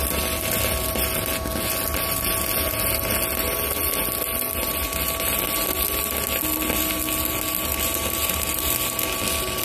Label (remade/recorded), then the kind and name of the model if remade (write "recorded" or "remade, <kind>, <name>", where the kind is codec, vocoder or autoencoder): recorded